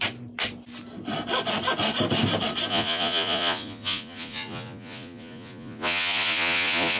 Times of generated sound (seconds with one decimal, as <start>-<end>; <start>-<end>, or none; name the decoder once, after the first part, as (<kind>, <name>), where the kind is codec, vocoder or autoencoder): 2.7-7.0 (vocoder, Vocos)